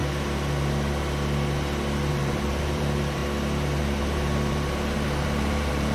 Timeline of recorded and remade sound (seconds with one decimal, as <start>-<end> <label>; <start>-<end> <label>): 0.0-2.1 recorded; 2.1-3.2 remade; 3.2-3.8 recorded; 3.8-5.9 remade